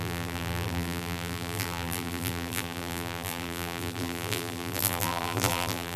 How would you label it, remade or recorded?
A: remade